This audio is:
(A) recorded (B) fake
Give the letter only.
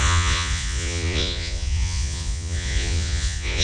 B